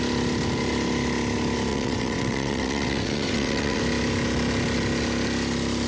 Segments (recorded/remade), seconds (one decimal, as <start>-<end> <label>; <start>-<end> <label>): 0.0-1.7 recorded; 1.7-3.8 remade; 3.8-5.9 recorded